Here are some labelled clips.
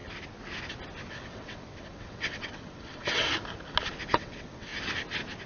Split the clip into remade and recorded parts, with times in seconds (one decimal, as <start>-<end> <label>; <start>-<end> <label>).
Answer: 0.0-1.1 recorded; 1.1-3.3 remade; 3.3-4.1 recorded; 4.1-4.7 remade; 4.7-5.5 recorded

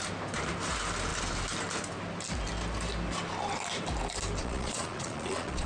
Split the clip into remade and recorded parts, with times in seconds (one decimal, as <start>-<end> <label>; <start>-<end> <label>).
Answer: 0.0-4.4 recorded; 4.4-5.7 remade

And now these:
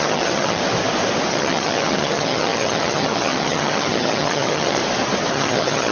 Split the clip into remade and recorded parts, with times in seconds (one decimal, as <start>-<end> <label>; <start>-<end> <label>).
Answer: 0.0-0.6 remade; 0.6-1.3 recorded; 1.3-4.8 remade; 4.8-5.3 recorded; 5.3-5.9 remade

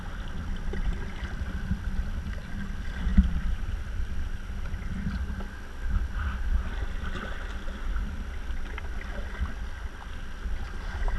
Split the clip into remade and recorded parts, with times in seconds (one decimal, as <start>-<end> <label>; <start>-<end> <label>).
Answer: 0.0-11.2 recorded